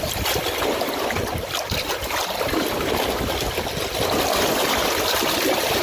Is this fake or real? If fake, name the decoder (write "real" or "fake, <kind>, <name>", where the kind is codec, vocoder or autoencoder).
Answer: real